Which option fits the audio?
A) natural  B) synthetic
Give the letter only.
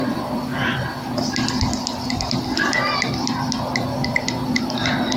A